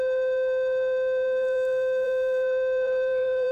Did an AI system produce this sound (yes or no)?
yes